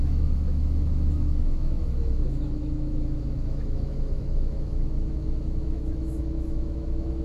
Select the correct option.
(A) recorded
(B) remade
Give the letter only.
B